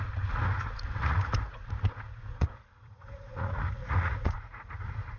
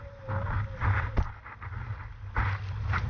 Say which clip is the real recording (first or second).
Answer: second